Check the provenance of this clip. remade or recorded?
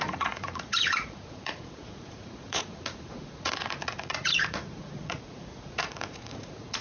remade